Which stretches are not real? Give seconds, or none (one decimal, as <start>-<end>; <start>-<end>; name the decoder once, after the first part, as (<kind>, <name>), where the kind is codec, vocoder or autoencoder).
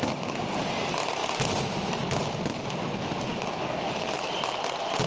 3.3-4.3 (autoencoder, DAC-VAE)